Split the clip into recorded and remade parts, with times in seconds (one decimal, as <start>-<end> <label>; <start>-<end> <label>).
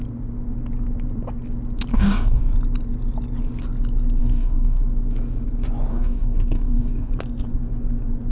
0.0-1.9 recorded; 1.9-2.4 remade; 2.4-4.2 recorded; 4.2-4.8 remade; 4.8-5.9 recorded; 5.9-7.1 remade; 7.1-8.3 recorded